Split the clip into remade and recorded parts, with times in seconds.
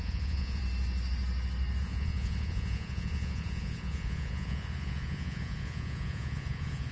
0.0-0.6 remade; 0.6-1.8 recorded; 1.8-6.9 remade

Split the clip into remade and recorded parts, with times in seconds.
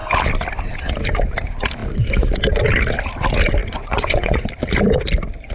0.0-3.6 recorded; 3.6-4.5 remade; 4.5-5.5 recorded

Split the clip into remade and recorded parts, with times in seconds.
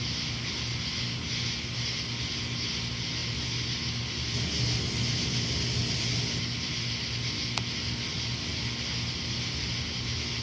0.0-10.4 recorded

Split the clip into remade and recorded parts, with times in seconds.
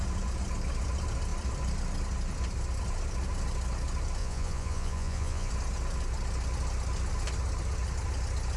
0.0-4.2 recorded; 4.2-5.5 remade; 5.5-8.6 recorded